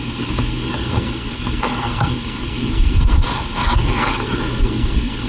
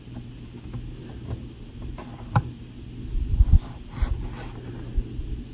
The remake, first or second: first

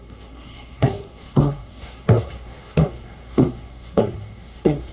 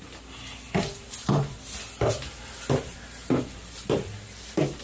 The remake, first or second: first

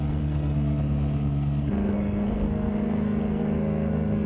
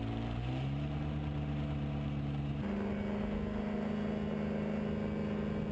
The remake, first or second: first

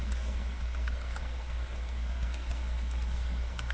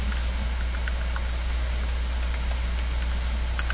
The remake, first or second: first